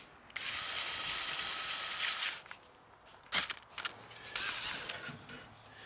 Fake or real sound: real